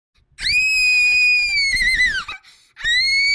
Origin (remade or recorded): recorded